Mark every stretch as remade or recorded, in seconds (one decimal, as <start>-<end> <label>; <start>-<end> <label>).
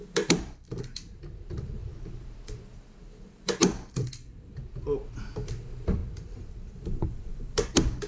0.0-8.1 remade